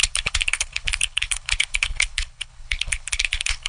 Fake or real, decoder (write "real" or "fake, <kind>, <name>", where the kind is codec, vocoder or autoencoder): fake, codec, HILCodec